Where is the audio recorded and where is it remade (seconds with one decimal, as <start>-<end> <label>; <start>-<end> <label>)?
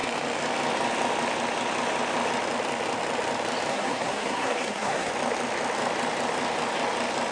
0.0-3.7 recorded; 3.7-5.1 remade; 5.1-7.3 recorded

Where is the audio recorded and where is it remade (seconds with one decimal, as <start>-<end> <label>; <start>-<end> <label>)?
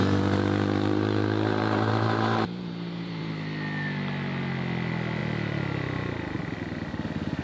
0.0-3.3 remade; 3.3-7.4 recorded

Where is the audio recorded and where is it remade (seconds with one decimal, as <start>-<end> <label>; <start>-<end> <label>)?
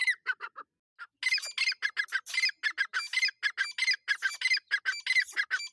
0.0-5.7 recorded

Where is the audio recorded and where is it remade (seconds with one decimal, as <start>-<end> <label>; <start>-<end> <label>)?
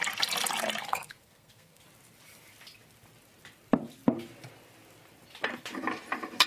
0.0-0.8 recorded; 0.8-1.8 remade; 1.8-6.5 recorded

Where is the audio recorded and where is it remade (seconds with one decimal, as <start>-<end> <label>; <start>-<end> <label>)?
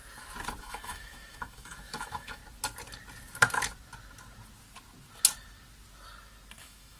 0.0-0.6 recorded; 0.6-2.4 remade; 2.4-6.6 recorded; 6.6-7.0 remade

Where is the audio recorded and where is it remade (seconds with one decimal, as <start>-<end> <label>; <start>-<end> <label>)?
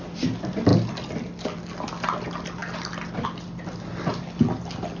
0.0-5.0 recorded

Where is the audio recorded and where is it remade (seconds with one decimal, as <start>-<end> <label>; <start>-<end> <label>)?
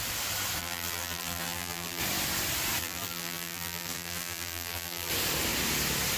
0.0-0.6 recorded; 0.6-2.0 remade; 2.0-2.8 recorded; 2.8-5.1 remade; 5.1-6.2 recorded